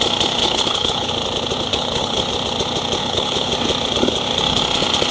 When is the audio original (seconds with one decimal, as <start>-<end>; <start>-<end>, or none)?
0.0-0.4; 1.1-1.7; 2.3-3.0; 3.5-5.1